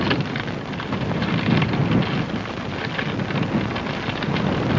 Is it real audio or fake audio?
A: real